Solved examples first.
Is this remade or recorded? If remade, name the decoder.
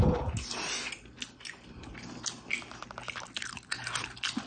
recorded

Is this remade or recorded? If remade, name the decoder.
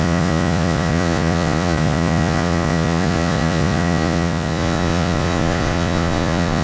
remade, vocoder, Vocos